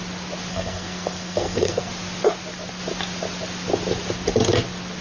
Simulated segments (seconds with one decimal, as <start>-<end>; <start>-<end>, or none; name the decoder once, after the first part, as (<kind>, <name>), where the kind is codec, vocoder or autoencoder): 0.5-1.9 (codec, SNAC)